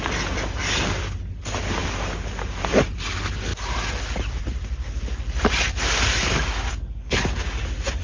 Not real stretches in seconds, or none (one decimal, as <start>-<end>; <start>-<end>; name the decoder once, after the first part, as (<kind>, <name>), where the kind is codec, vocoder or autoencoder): none